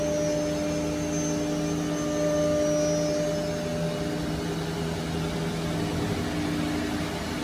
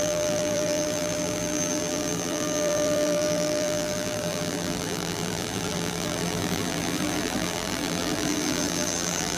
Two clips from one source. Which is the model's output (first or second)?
second